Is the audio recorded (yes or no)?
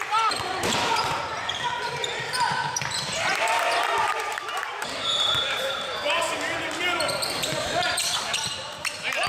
no